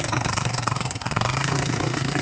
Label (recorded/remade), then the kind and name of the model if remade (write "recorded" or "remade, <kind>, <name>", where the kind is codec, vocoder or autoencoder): remade, codec, SNAC